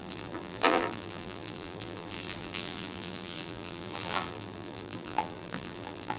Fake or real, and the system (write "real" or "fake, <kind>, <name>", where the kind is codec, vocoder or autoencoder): fake, vocoder, BigVGAN v2